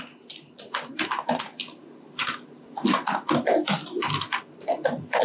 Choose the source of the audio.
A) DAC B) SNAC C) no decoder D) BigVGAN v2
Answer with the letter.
C